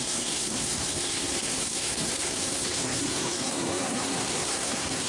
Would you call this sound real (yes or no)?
no